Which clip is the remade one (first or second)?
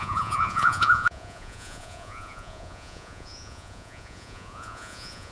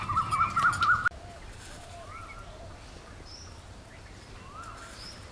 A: first